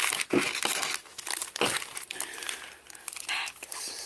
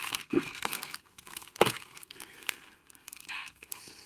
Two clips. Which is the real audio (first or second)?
first